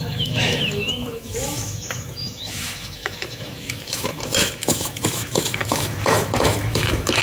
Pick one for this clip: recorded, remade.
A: remade